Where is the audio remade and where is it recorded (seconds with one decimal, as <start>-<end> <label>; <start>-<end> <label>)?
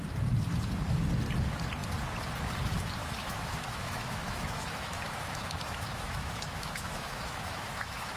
0.0-3.0 recorded; 3.0-8.2 remade